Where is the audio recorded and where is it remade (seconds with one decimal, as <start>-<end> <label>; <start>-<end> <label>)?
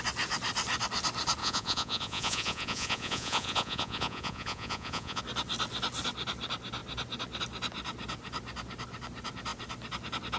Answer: 0.0-1.4 recorded; 1.4-5.2 remade; 5.2-10.4 recorded